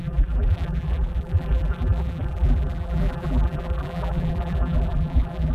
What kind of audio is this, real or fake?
fake